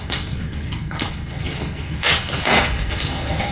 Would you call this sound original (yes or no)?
no